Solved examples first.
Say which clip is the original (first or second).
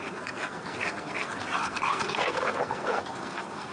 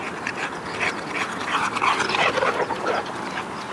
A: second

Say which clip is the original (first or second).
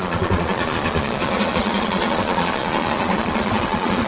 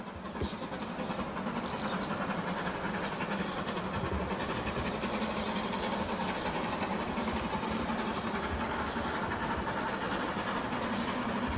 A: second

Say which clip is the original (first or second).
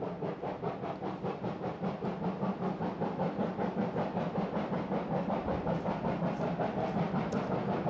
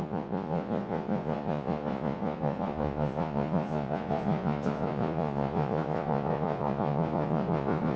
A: first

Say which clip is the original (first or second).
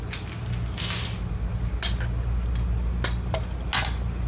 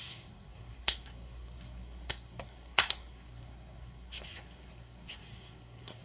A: first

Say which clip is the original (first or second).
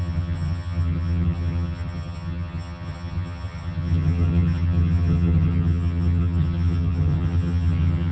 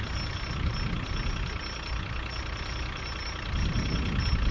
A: second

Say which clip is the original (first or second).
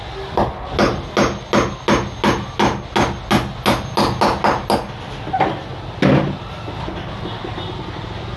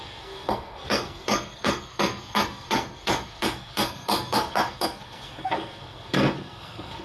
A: first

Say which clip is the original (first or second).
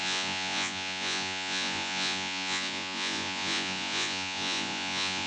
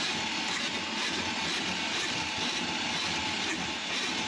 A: second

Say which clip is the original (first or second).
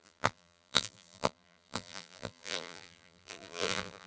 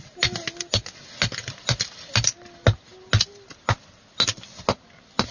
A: second